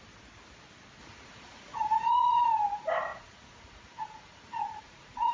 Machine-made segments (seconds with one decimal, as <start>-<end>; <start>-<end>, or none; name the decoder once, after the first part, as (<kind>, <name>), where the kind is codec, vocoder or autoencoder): 1.0-2.5 (vocoder, Vocos); 3.1-5.3